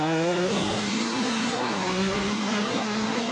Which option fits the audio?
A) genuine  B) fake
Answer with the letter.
B